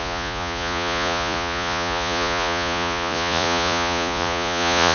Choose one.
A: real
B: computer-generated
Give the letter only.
B